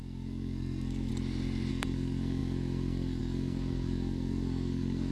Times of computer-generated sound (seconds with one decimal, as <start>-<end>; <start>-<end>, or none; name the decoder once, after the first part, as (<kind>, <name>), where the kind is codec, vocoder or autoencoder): 0.0-1.1 (codec, SNAC); 1.7-5.1